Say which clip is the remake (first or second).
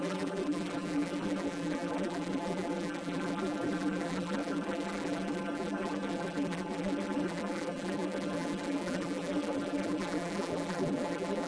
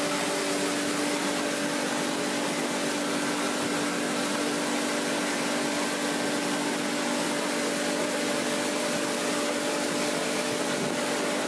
first